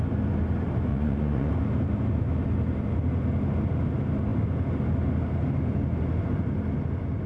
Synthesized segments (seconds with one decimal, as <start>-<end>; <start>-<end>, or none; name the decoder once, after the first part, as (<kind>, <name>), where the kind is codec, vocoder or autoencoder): 0.9-1.5 (vocoder, Vocos)